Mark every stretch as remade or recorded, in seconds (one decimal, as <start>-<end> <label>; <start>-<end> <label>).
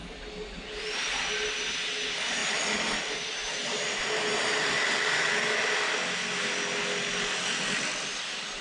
0.0-8.6 recorded